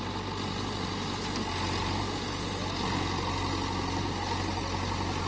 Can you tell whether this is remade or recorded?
recorded